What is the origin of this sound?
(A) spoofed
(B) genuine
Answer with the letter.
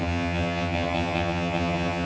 A